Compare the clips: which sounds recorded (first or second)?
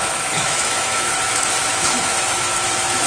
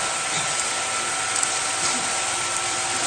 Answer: second